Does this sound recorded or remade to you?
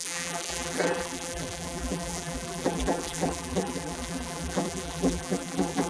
remade